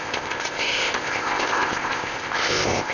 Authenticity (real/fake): fake